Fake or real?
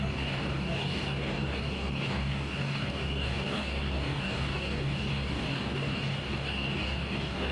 fake